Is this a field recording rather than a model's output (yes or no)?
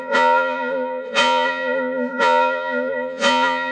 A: no